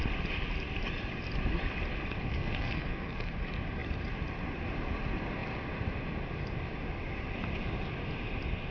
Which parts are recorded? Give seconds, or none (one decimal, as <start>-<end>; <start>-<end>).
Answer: 0.0-2.3; 3.3-8.7